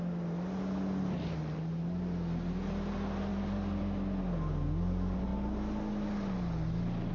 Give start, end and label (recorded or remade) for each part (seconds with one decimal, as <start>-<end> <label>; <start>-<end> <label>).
0.0-3.3 recorded; 3.3-3.8 remade; 3.8-7.1 recorded